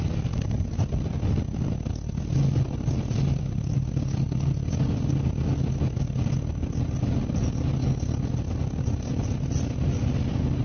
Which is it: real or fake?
real